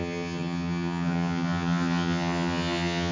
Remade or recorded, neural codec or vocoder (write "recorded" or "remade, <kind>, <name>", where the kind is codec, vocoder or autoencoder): remade, vocoder, HiFi-GAN